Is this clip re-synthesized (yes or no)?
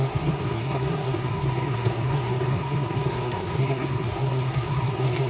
yes